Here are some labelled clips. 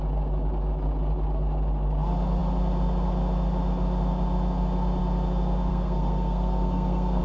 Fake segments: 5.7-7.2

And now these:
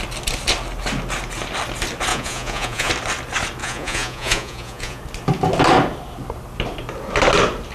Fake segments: 2.1-2.9; 3.6-5.0

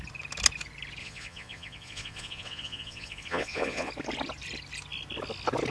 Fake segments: 1.0-3.9

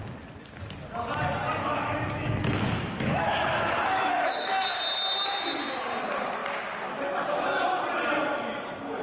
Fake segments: 1.6-4.5

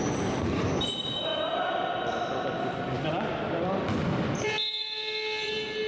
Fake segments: none

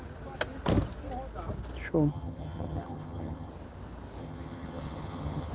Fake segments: 2.1-3.5; 4.2-5.5